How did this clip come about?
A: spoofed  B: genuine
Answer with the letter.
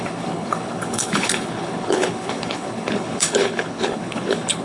A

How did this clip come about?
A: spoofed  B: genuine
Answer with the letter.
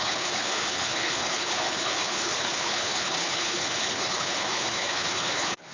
A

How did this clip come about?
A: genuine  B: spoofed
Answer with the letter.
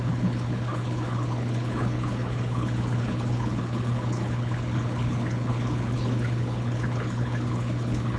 B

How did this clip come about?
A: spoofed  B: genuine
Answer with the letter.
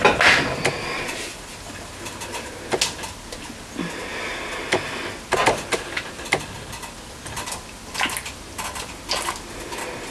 B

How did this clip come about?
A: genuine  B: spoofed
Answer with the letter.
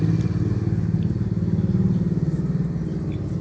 A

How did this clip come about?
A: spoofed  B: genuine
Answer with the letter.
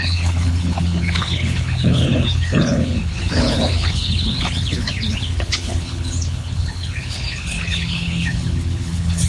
A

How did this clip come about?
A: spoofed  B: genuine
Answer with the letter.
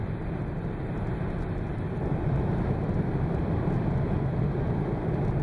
B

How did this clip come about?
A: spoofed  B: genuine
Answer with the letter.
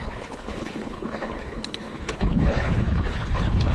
A